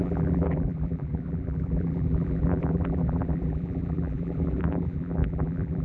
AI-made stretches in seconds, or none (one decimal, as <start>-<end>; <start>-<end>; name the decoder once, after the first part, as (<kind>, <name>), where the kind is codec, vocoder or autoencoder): 0.0-5.8 (vocoder, BigVGAN v2)